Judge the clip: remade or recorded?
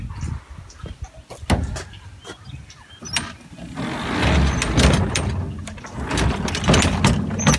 recorded